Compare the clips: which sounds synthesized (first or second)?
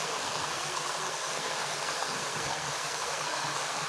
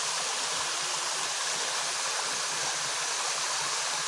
first